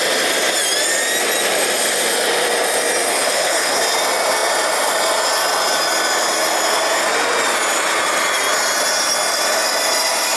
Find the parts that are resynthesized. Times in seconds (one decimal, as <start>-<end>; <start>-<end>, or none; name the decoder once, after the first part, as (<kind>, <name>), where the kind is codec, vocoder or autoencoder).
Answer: 3.1-3.8 (codec, HILCodec)